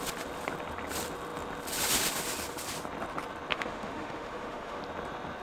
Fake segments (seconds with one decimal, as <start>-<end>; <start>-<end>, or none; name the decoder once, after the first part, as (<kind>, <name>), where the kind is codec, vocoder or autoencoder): 3.5-4.8 (autoencoder, DAC-VAE)